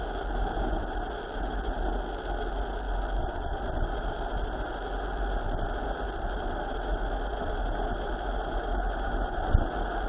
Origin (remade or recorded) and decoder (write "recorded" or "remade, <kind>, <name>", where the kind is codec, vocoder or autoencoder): recorded